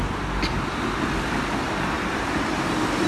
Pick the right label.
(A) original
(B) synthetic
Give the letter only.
A